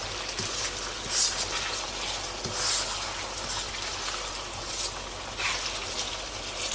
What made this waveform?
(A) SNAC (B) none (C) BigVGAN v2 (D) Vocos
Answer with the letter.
B